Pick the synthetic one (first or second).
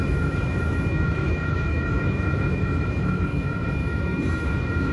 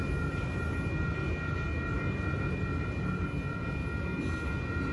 first